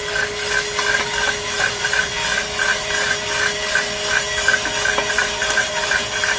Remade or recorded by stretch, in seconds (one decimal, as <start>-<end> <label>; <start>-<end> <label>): 0.0-1.7 recorded; 1.7-2.1 remade; 2.1-5.1 recorded; 5.1-6.4 remade